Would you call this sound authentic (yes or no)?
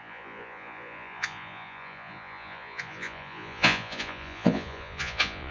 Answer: no